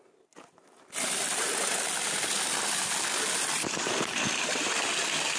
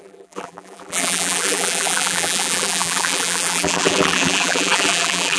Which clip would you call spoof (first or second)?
second